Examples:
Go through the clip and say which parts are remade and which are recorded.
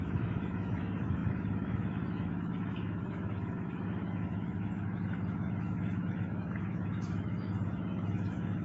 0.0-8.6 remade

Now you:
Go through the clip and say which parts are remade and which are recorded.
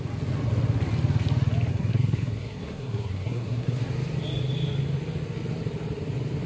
0.0-1.7 recorded; 1.7-3.8 remade; 3.8-6.5 recorded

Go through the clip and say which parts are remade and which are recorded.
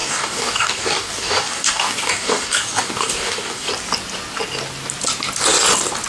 0.0-3.7 remade; 3.7-6.1 recorded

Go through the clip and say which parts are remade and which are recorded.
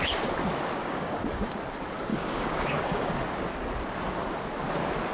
0.0-0.8 recorded; 0.8-1.5 remade; 1.5-2.1 recorded; 2.1-3.1 remade; 3.1-5.1 recorded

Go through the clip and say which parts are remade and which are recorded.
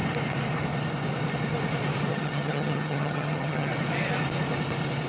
0.0-2.1 recorded; 2.1-3.7 remade; 3.7-5.1 recorded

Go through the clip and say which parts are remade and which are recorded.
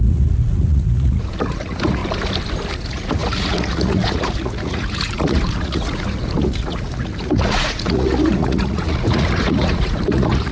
0.0-2.0 remade; 2.0-2.8 recorded; 2.8-10.5 remade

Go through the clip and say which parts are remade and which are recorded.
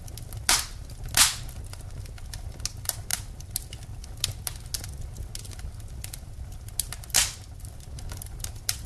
0.0-8.9 recorded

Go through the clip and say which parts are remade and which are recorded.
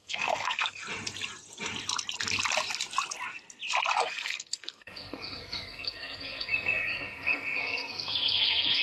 0.0-0.8 remade; 0.8-4.0 recorded; 4.0-8.8 remade